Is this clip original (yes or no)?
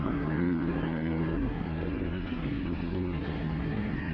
no